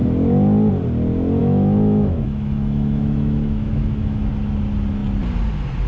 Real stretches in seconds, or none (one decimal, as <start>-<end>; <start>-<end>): 0.0-1.4; 4.3-5.9